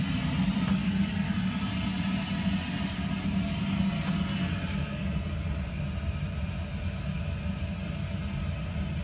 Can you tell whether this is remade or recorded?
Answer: recorded